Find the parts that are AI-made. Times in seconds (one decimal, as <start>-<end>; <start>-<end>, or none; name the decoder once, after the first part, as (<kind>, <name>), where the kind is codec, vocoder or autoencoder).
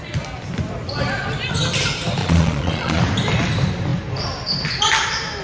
2.2-3.0 (vocoder, Vocos)